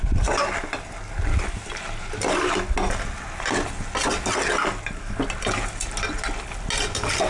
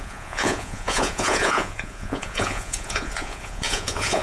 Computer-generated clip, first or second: second